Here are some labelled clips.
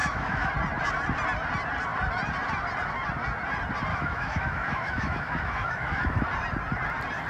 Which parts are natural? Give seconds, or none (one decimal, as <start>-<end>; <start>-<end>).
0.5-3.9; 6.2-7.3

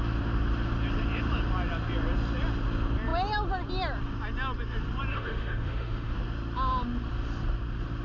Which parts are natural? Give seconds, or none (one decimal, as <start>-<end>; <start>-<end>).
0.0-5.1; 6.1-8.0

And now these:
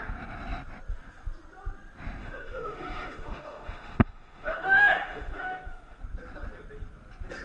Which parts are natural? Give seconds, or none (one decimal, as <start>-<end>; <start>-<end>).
0.0-2.2; 6.0-7.4